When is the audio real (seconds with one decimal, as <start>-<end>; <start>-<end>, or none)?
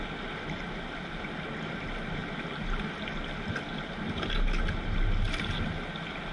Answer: 0.0-6.3